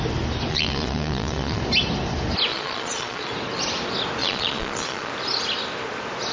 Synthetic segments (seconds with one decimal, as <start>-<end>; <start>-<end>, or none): 0.5-1.6; 2.5-3.3; 4.2-5.1